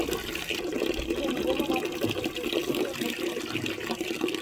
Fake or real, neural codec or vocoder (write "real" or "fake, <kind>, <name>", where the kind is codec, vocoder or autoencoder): real